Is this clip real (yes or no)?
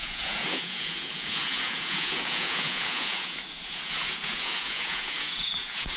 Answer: no